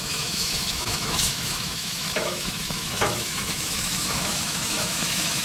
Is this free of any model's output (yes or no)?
no